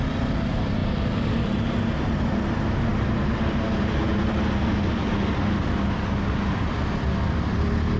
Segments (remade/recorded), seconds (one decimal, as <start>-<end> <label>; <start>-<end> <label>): 0.0-8.0 recorded